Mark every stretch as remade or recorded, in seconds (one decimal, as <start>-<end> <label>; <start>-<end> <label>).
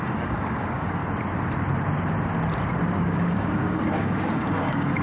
0.0-1.0 remade; 1.0-3.0 recorded; 3.0-5.0 remade